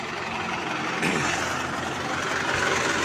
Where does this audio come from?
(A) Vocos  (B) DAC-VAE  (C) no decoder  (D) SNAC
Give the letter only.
C